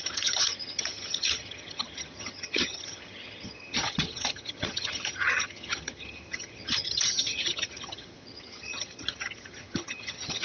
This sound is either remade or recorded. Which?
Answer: remade